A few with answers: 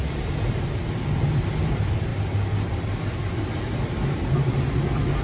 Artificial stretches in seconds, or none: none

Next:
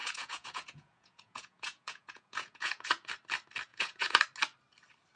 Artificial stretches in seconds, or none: 0.0-3.1 (vocoder, Vocos); 3.7-4.2

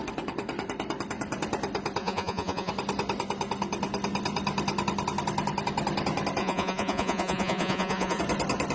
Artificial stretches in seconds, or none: 2.0-2.7 (vocoder, Vocos); 6.4-8.2

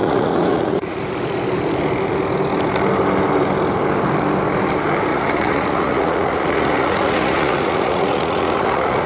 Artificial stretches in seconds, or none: 0.0-1.0 (vocoder, Vocos); 5.1-9.1

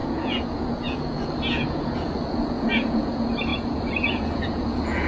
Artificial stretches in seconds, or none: 0.0-5.1 (vocoder, Vocos)